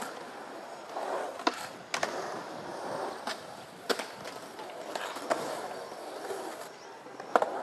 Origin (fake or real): real